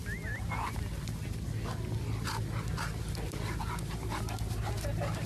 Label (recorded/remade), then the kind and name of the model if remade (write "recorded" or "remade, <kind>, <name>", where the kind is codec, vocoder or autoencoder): recorded